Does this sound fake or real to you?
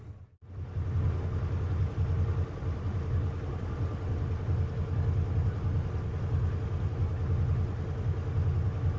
real